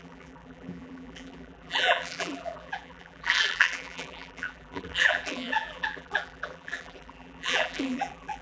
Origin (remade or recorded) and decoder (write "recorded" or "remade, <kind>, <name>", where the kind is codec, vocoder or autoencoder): remade, vocoder, BigVGAN v2